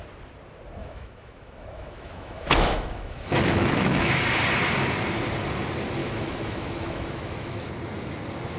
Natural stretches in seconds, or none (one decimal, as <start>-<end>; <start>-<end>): 0.0-0.8; 4.2-6.0; 7.7-8.6